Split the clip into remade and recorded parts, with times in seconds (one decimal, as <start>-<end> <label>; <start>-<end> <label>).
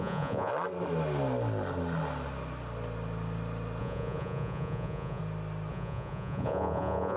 0.0-0.5 remade; 0.5-3.8 recorded; 3.8-5.2 remade; 5.2-5.7 recorded; 5.7-7.2 remade